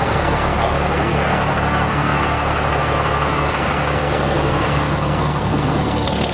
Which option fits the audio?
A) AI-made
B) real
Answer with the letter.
A